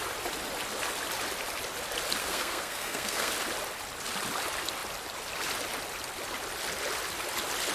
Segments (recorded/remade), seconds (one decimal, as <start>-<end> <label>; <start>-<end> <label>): 0.0-2.2 recorded; 2.2-3.3 remade; 3.3-7.7 recorded